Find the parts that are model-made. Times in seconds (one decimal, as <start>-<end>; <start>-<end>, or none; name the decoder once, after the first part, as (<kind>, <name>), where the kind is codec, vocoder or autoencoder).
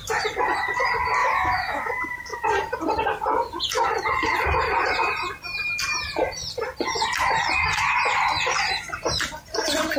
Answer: 1.2-1.9 (autoencoder, DAC-VAE)